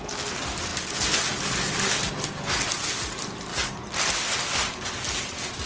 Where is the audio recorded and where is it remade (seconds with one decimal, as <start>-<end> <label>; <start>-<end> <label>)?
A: 0.0-5.7 recorded